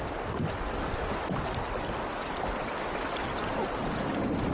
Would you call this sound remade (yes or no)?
no